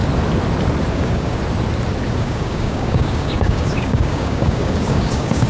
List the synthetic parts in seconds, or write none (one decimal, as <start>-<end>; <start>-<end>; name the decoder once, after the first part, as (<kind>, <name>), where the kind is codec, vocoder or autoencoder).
0.9-1.4 (codec, DAC); 2.2-5.5